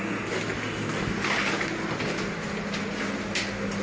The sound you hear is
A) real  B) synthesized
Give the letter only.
A